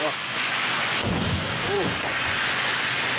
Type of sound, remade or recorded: remade